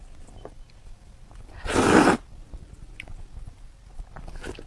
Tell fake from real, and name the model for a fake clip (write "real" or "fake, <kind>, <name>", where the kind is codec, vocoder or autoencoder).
fake, vocoder, BigVGAN v2